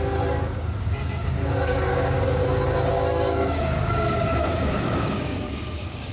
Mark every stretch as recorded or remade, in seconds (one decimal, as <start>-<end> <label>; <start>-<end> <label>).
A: 0.0-2.4 remade; 2.4-2.9 recorded; 2.9-6.1 remade